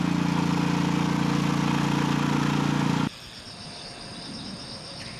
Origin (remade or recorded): recorded